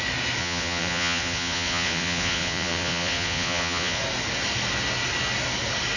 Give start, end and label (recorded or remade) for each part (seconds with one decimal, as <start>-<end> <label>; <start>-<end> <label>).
0.0-0.4 recorded; 0.4-4.0 remade; 4.0-6.0 recorded